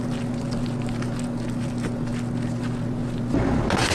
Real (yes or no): yes